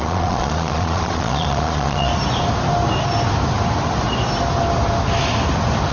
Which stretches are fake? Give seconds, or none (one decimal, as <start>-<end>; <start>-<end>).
0.0-2.1